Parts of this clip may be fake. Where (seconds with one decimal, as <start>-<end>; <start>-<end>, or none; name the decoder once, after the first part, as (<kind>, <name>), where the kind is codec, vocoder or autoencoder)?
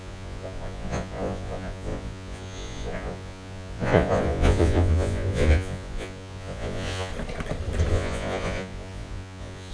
0.0-7.1 (vocoder, Vocos); 7.9-9.7